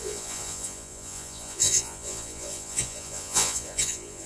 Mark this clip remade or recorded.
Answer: remade